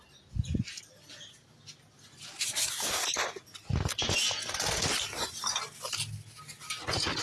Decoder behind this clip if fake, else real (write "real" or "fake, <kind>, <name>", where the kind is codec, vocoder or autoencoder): real